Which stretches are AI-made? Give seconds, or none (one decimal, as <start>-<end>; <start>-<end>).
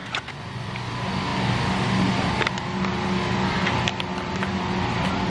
0.0-0.7